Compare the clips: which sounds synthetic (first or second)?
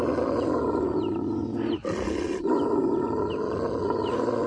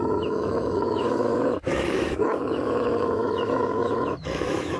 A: second